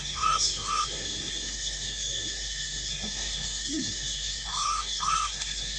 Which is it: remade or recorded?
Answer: remade